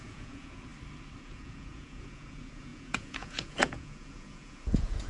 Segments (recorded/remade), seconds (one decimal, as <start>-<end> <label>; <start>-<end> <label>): 0.0-0.7 remade; 0.7-1.2 recorded; 1.2-5.1 remade